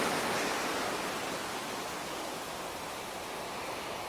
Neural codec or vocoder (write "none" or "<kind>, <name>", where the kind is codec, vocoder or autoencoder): none